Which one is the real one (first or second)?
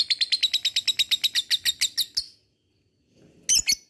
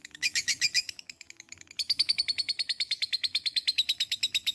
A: first